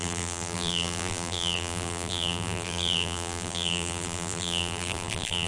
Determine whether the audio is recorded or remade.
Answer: remade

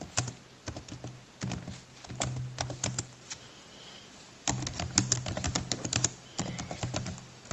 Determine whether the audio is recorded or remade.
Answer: recorded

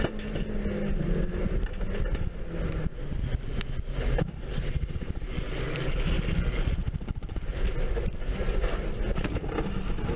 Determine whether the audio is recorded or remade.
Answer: recorded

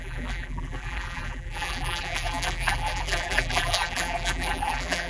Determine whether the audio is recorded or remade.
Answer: remade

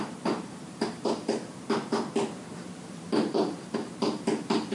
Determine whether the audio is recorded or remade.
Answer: remade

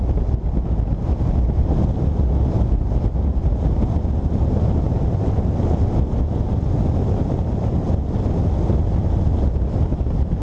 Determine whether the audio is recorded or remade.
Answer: recorded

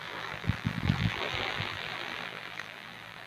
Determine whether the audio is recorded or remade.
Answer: remade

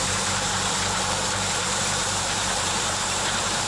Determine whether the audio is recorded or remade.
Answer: remade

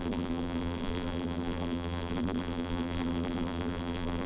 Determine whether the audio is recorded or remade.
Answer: remade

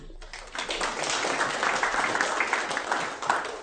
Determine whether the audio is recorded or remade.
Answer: recorded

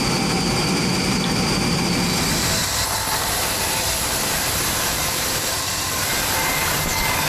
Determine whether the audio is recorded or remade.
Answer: remade